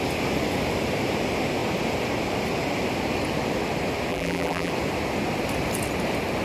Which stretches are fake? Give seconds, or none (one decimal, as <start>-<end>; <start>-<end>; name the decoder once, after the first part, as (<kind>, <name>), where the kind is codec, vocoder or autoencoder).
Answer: 4.1-4.7 (vocoder, BigVGAN v2)